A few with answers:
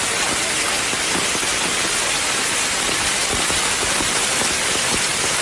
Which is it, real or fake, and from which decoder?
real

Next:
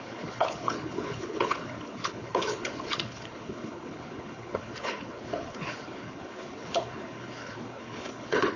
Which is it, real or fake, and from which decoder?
fake, codec, HILCodec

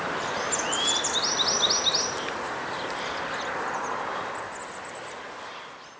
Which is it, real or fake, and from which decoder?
real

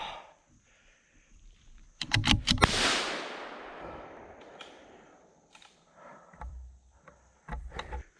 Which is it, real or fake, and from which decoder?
fake, vocoder, BigVGAN v2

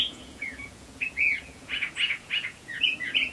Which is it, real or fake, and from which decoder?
fake, vocoder, Vocos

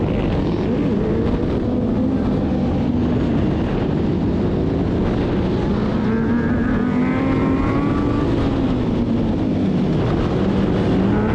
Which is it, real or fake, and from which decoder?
real